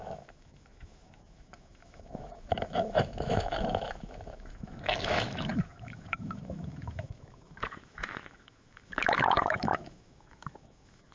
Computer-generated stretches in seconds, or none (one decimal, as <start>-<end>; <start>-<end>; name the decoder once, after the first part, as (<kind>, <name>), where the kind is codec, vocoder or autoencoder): 0.0-11.1 (autoencoder, DAC-VAE)